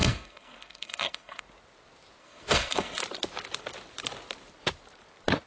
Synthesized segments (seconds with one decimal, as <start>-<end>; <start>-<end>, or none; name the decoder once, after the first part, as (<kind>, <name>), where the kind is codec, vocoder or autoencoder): 0.0-1.4 (codec, SNAC); 2.2-3.0